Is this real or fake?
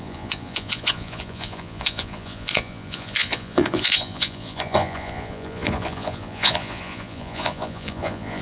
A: fake